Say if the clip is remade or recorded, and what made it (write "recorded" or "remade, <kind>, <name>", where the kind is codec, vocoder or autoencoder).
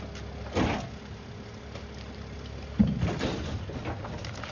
recorded